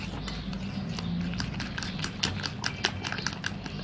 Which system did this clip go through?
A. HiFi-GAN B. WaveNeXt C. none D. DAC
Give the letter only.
C